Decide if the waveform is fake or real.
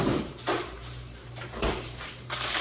fake